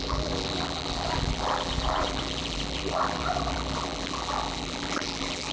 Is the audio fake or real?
fake